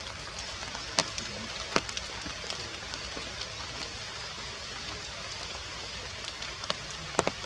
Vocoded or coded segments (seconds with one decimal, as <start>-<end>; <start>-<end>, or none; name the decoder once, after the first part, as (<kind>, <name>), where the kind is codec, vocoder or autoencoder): none